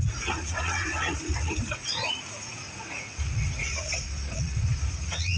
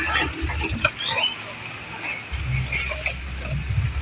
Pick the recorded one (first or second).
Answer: second